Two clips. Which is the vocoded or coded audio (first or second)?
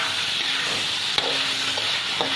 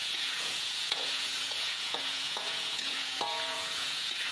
second